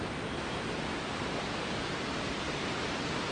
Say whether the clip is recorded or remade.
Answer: recorded